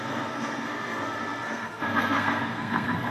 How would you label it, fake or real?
fake